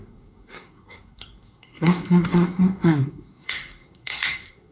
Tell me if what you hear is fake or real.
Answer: fake